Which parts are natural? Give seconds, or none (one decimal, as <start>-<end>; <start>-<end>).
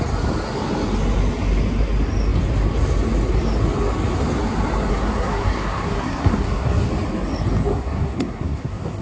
0.0-4.9; 6.9-7.7